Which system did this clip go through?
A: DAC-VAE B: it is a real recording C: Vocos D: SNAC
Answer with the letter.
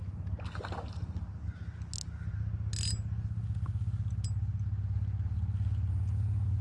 B